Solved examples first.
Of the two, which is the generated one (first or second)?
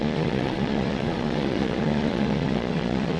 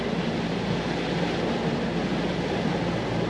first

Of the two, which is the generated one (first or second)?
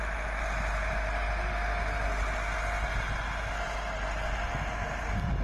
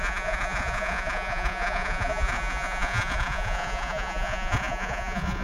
second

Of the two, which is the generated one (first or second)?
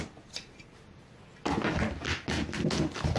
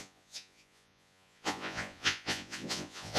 second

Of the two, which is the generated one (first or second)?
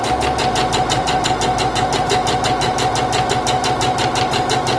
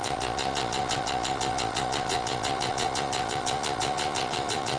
second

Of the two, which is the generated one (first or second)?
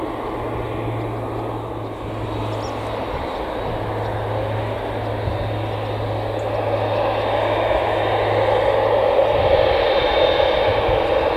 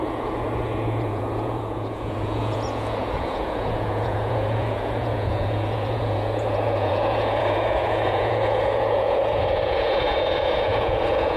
second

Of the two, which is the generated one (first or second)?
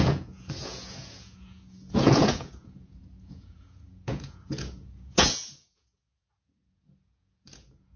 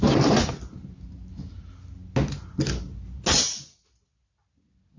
first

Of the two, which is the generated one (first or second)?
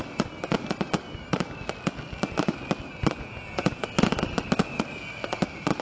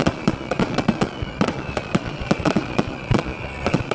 second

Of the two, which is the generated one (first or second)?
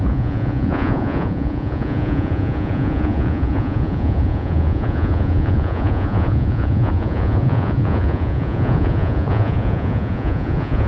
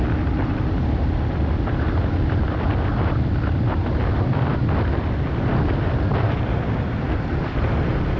first